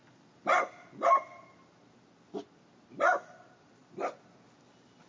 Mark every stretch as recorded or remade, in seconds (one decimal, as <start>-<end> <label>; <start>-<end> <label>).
0.0-1.8 remade; 1.8-5.1 recorded

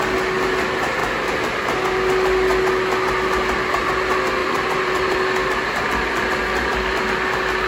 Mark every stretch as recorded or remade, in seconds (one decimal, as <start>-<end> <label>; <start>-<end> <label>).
0.0-4.4 recorded; 4.4-7.0 remade; 7.0-7.7 recorded

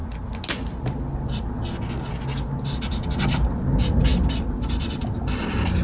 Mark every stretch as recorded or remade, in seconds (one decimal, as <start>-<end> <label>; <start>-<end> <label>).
0.0-3.3 recorded; 3.3-5.8 remade

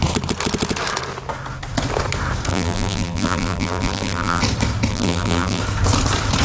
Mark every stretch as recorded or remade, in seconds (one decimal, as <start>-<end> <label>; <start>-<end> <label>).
0.0-2.5 recorded; 2.5-4.4 remade; 4.4-4.9 recorded; 4.9-5.6 remade; 5.6-6.4 recorded

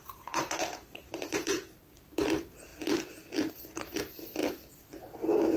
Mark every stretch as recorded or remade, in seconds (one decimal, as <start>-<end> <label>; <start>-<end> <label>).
0.0-2.7 remade; 2.7-3.7 recorded; 3.7-4.4 remade; 4.4-5.6 recorded

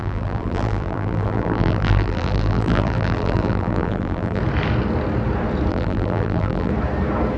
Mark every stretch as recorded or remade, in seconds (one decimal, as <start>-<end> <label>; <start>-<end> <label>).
0.0-4.4 remade; 4.4-5.7 recorded; 5.7-6.7 remade; 6.7-7.4 recorded